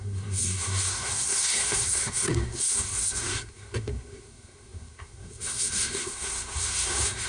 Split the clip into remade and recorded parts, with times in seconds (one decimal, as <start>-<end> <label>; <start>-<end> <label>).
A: 0.0-7.3 remade